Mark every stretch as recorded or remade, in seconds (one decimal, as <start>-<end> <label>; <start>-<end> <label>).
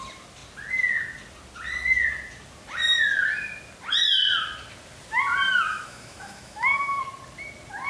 0.0-5.7 recorded; 5.7-7.0 remade; 7.0-7.9 recorded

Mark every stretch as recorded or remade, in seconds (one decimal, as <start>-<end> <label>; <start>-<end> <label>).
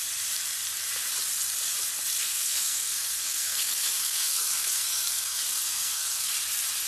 0.0-2.2 recorded; 2.2-6.3 remade; 6.3-6.9 recorded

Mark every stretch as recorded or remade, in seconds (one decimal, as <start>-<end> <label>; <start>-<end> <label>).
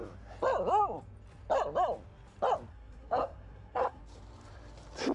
0.0-2.7 recorded; 2.7-4.0 remade; 4.0-5.1 recorded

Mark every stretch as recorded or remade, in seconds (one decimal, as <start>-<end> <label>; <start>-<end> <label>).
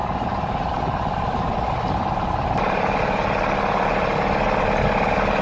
0.0-3.0 remade; 3.0-5.4 recorded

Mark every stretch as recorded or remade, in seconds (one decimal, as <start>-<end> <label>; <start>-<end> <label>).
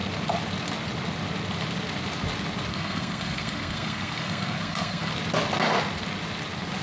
0.0-2.7 recorded; 2.7-5.1 remade; 5.1-6.8 recorded